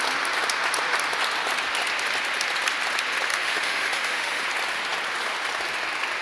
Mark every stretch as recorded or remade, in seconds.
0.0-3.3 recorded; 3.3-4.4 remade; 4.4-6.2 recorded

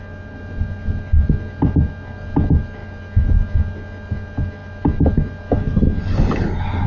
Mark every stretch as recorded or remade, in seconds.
0.0-6.9 recorded

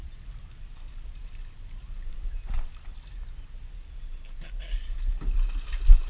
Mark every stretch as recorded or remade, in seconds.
0.0-6.1 recorded

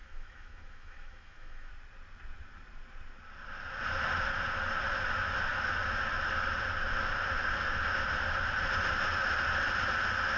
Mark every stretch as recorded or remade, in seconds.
0.0-1.7 remade; 1.7-10.4 recorded

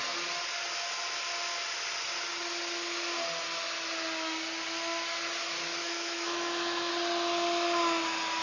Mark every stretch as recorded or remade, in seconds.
0.0-5.8 recorded; 5.8-6.9 remade; 6.9-8.4 recorded

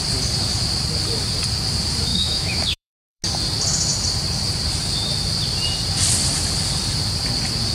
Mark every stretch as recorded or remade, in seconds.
0.0-2.1 recorded; 2.1-3.2 remade; 3.2-7.7 recorded